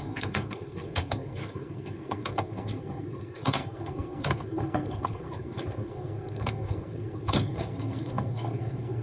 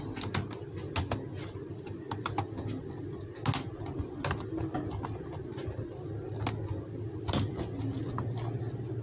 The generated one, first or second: first